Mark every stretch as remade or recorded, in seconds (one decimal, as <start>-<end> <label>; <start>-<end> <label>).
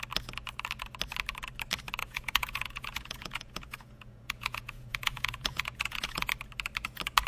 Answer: 0.0-2.0 recorded; 2.0-6.3 remade; 6.3-7.3 recorded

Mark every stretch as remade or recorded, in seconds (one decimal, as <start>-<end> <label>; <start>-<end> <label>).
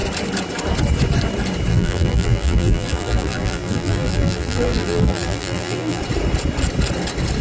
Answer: 0.0-1.7 recorded; 1.7-6.0 remade; 6.0-7.4 recorded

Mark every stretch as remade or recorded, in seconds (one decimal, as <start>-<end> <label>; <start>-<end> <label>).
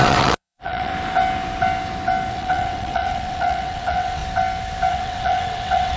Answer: 0.0-0.9 remade; 0.9-2.3 recorded; 2.3-4.2 remade; 4.2-4.9 recorded; 4.9-6.0 remade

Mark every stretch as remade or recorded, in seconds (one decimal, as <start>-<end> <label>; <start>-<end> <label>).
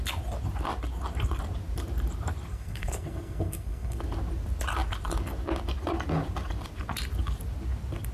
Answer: 0.0-2.5 recorded; 2.5-4.0 remade; 4.0-8.1 recorded